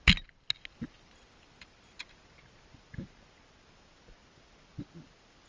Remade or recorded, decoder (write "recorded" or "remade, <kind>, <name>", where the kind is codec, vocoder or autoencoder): recorded